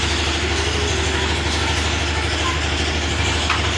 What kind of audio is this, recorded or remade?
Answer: recorded